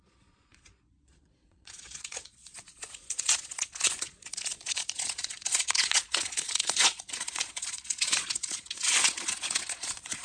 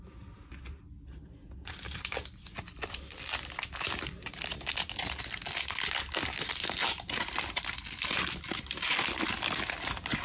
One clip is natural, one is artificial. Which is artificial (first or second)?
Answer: first